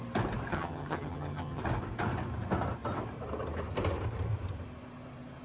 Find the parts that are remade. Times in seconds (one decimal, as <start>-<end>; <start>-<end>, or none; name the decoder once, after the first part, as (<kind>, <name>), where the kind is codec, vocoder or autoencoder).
0.5-1.6 (vocoder, HiFi-GAN)